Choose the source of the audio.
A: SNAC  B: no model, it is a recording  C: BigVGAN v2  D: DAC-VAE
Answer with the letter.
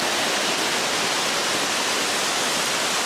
B